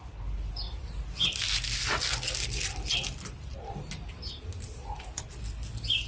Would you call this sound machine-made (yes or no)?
no